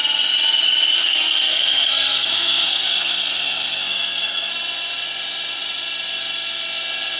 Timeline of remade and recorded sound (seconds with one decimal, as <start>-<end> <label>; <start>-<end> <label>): 0.0-1.0 recorded; 1.0-4.5 remade; 4.5-7.2 recorded